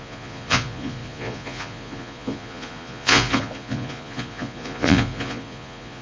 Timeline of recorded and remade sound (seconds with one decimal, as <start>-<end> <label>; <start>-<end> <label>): 0.0-6.0 remade